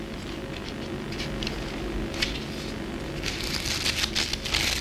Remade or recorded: recorded